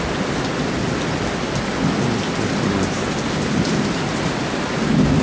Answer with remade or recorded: recorded